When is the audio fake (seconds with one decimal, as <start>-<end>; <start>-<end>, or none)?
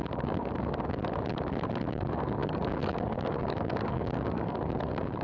0.0-1.0; 1.9-5.2